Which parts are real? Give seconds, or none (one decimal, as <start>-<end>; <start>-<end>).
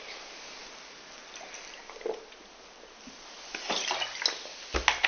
0.0-5.1